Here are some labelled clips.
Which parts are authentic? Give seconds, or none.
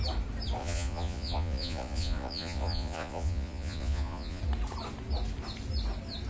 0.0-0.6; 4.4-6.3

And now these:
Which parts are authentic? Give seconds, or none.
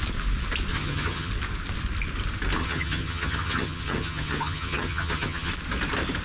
0.0-0.7; 1.3-2.6; 5.5-6.2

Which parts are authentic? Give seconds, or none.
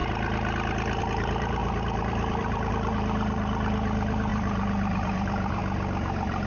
0.0-1.0; 5.6-6.5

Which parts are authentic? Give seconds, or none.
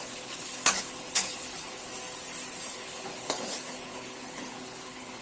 1.9-2.7